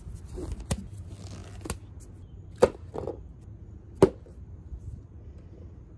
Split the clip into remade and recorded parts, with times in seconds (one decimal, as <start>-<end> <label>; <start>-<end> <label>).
0.0-6.0 recorded